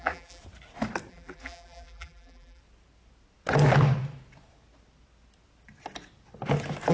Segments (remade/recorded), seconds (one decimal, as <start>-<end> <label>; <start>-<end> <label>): 0.0-0.4 remade; 0.4-1.1 recorded; 1.1-2.6 remade; 2.6-6.9 recorded